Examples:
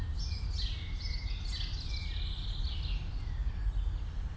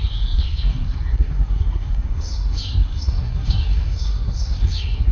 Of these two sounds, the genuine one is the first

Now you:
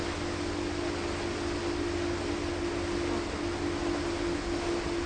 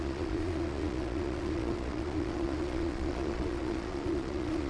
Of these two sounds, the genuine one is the first